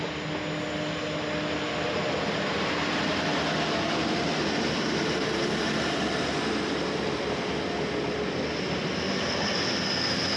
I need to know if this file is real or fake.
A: real